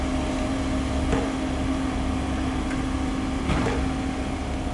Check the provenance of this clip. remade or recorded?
recorded